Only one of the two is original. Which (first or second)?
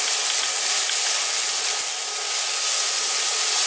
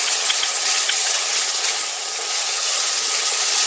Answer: first